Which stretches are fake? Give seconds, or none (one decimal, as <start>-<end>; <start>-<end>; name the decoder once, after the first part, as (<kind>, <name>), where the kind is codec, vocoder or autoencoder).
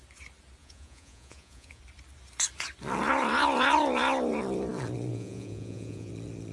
0.6-1.8 (vocoder, Vocos); 5.1-6.1